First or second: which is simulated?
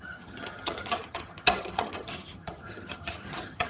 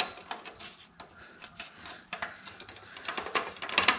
first